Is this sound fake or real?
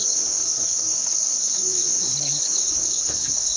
fake